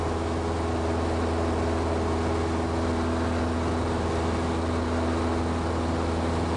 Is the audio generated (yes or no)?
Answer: no